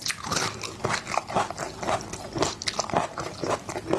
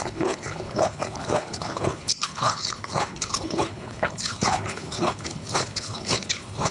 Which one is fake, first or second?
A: second